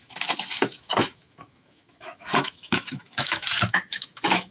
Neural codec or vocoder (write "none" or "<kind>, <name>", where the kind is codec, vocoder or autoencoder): autoencoder, DAC-VAE